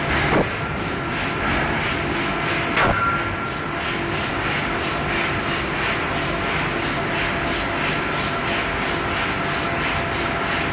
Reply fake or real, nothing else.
real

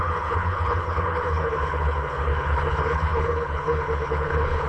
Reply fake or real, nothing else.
fake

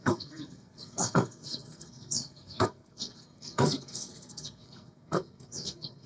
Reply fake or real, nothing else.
fake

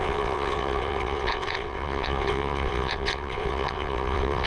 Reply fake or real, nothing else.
fake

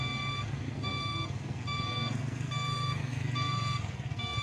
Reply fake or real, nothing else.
fake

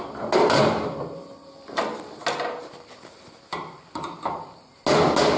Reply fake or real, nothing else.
real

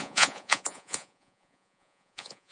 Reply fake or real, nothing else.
fake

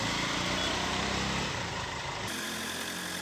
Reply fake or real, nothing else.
real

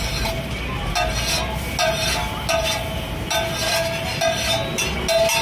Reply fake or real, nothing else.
real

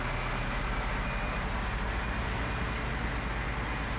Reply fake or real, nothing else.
real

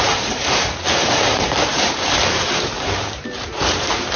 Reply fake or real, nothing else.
fake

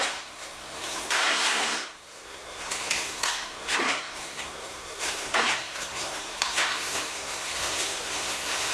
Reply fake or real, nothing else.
fake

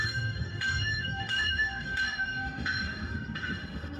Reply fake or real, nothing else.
fake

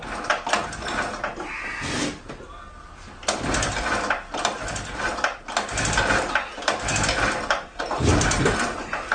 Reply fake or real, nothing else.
real